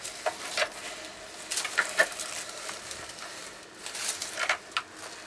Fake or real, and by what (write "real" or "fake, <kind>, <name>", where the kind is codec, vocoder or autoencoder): real